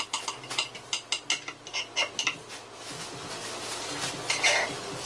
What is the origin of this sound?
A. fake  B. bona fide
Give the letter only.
B